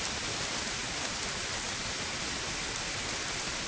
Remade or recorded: recorded